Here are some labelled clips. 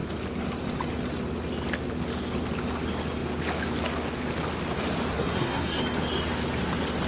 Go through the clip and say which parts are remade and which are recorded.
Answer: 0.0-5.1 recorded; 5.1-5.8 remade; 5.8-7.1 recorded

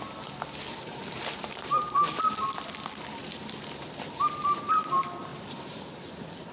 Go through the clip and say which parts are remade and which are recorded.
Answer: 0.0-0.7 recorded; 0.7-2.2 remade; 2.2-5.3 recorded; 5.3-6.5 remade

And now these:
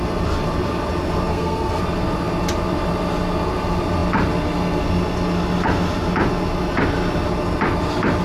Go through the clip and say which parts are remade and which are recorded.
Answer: 0.0-1.3 recorded; 1.3-1.8 remade; 1.8-8.2 recorded

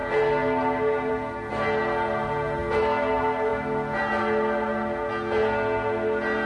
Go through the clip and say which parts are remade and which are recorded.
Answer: 0.0-6.5 recorded

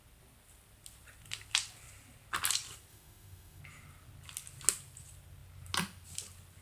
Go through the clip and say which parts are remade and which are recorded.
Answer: 0.0-2.9 recorded; 2.9-3.6 remade; 3.6-6.6 recorded